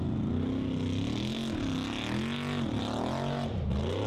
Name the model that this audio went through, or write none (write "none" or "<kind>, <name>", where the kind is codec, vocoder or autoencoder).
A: none